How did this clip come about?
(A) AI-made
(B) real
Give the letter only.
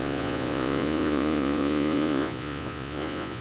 A